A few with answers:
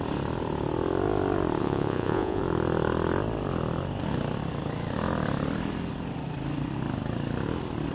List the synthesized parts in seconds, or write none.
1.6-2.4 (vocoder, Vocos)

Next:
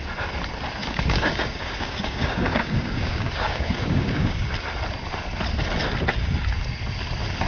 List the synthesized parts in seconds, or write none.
0.8-4.5 (codec, DAC)

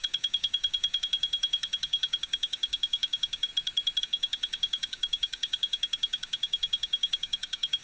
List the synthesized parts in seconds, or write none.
0.0-3.5 (codec, DAC); 4.0-7.8

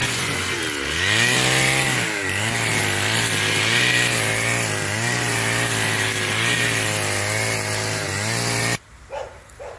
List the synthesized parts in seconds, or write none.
0.0-0.6 (vocoder, Vocos)

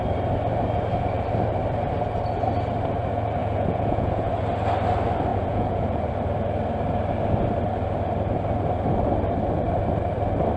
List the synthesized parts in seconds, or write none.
3.4-4.3 (vocoder, Vocos); 5.3-6.1

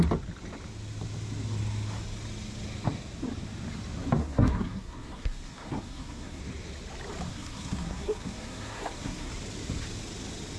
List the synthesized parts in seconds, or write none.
4.2-6.4 (codec, SNAC); 7.3-9.3

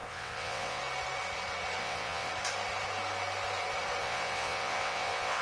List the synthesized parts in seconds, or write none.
0.0-0.8 (vocoder, WaveNeXt); 1.8-2.3; 4.0-5.4

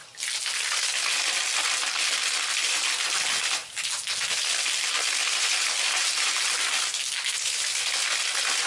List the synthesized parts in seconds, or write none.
5.2-6.4 (vocoder, BigVGAN v2)